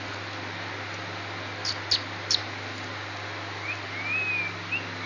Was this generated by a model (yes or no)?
no